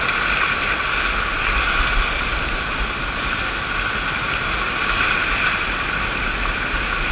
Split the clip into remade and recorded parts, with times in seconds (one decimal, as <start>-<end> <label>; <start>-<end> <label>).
0.0-7.1 recorded